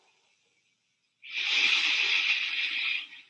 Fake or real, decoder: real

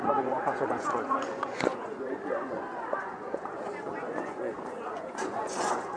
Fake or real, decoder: fake, vocoder, Vocos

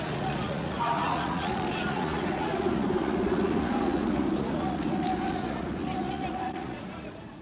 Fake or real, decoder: fake, vocoder, Vocos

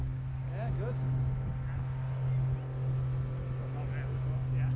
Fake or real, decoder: real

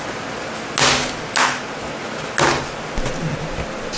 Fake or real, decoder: real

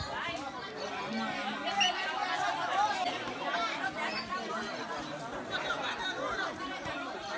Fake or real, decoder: real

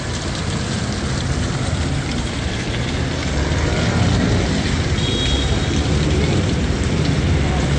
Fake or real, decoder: real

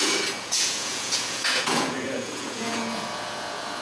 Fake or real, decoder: fake, vocoder, Vocos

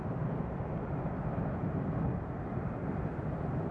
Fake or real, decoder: real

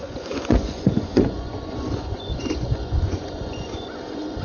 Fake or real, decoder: fake, vocoder, Vocos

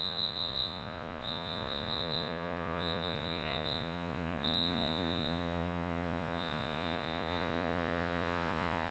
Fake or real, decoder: fake, vocoder, Vocos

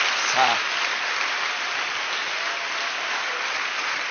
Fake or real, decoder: real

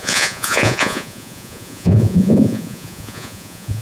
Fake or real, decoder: fake, vocoder, Vocos